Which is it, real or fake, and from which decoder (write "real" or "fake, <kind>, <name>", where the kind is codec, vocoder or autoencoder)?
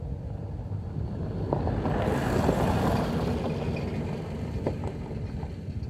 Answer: real